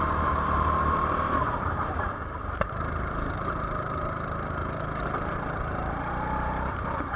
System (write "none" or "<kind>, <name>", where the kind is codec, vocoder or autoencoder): vocoder, BigVGAN v2